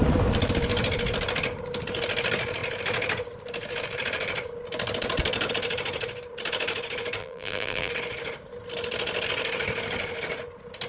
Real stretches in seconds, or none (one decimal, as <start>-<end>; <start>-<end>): 0.0-7.2; 7.9-10.9

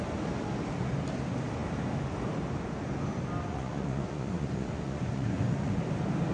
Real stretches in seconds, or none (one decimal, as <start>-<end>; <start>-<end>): 0.0-3.5; 5.8-6.3